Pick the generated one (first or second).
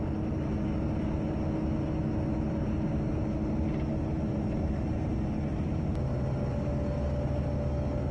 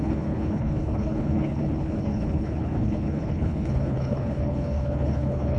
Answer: second